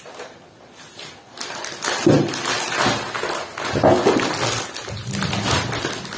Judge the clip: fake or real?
real